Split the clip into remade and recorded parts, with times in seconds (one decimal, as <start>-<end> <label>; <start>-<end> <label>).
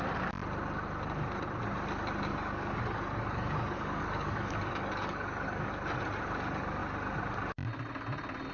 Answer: 0.0-2.3 recorded; 2.3-5.7 remade; 5.7-8.5 recorded